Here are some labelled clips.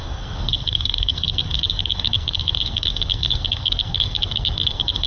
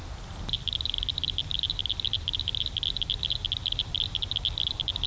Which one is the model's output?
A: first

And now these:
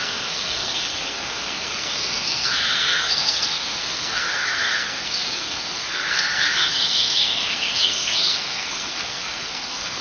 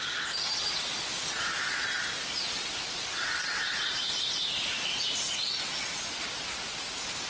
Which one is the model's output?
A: first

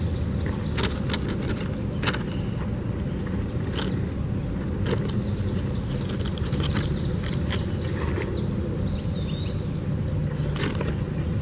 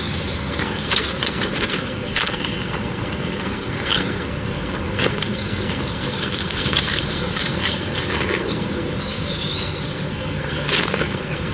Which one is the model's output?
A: second